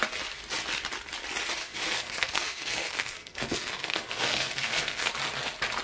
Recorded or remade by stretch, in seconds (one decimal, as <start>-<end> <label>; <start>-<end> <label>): 0.0-1.6 recorded; 1.6-5.1 remade; 5.1-5.8 recorded